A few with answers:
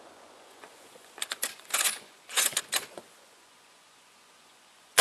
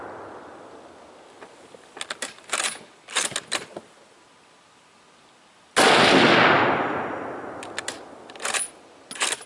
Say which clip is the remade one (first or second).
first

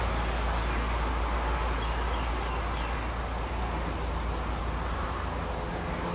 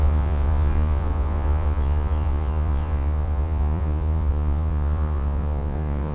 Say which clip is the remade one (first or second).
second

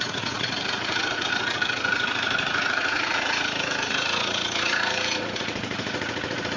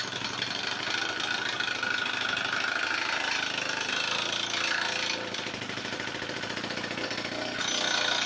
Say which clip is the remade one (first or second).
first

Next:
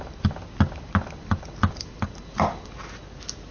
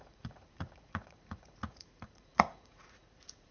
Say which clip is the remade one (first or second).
second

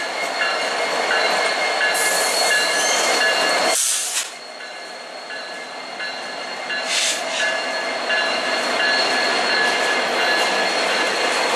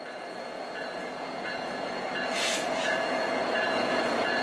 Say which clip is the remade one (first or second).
second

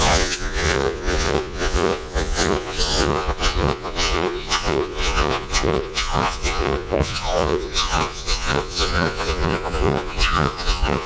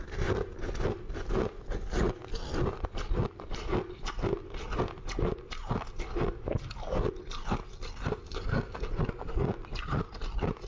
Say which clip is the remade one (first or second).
first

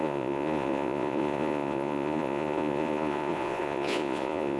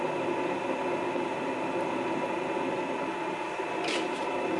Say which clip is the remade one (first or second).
first